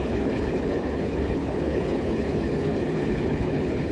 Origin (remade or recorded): remade